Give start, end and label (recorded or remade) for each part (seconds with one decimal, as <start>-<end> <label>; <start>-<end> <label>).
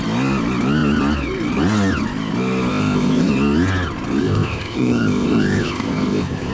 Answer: 0.0-2.7 recorded; 2.7-3.3 remade; 3.3-4.2 recorded; 4.2-6.5 remade